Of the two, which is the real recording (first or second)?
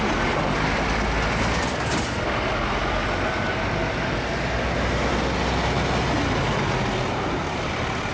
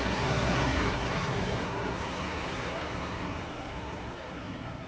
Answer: first